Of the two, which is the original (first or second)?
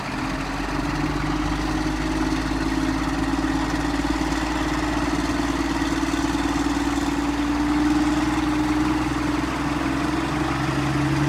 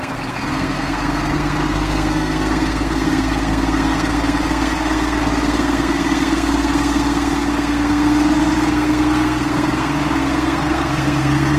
first